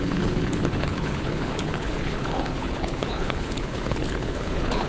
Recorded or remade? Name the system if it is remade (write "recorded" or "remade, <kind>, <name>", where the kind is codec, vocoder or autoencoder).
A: remade, codec, HILCodec